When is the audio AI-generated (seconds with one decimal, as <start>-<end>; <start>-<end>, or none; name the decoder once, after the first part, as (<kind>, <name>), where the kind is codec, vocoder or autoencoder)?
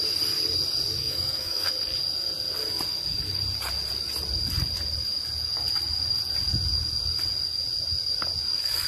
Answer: 1.0-1.7 (codec, SNAC)